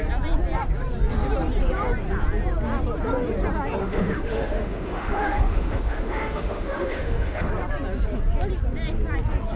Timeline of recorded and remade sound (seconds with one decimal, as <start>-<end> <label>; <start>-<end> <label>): 0.0-3.8 recorded; 3.8-7.5 remade; 7.5-9.6 recorded